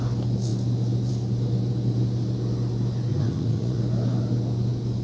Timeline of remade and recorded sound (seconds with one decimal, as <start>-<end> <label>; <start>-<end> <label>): 0.0-3.1 recorded; 3.1-3.8 remade; 3.8-5.0 recorded